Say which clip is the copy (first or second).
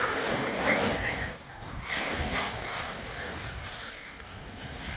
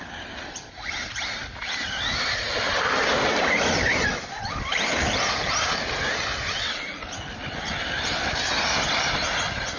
first